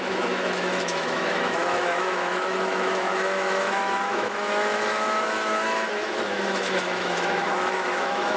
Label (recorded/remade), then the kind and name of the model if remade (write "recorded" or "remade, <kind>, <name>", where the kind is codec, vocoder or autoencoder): remade, autoencoder, DAC-VAE